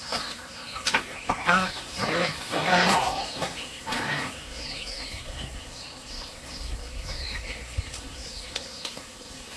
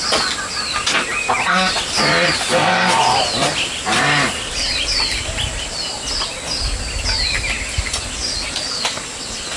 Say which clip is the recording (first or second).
second